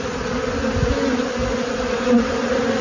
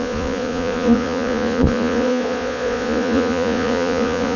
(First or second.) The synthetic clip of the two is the second